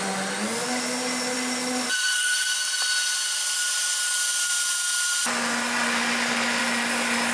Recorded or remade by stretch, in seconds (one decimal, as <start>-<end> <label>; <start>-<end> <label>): 0.0-7.3 recorded